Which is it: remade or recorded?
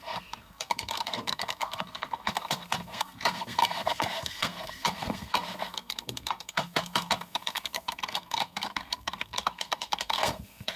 remade